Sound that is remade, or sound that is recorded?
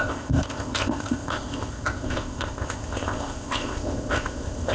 remade